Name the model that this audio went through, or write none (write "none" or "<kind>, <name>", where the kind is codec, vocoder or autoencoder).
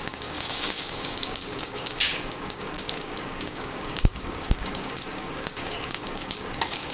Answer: codec, DAC